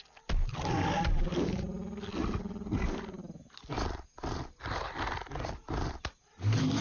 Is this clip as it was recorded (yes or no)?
yes